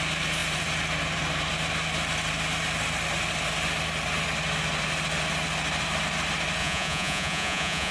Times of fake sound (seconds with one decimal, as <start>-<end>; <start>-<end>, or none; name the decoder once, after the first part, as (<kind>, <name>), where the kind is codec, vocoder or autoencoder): 6.6-7.9 (vocoder, Vocos)